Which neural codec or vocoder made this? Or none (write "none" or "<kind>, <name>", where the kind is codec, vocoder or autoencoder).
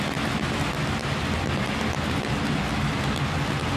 none